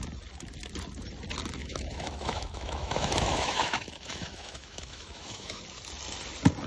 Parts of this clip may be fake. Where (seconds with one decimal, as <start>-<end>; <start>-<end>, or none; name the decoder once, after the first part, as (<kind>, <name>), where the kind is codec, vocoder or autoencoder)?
1.6-5.6 (autoencoder, DAC-VAE)